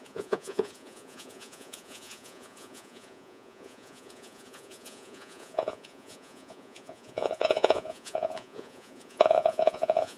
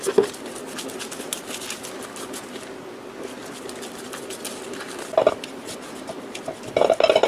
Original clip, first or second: second